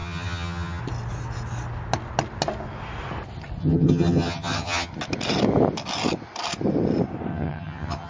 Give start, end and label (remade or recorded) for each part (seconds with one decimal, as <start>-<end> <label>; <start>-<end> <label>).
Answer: 0.0-0.8 remade; 0.8-3.6 recorded; 3.6-4.9 remade; 4.9-7.3 recorded; 7.3-8.1 remade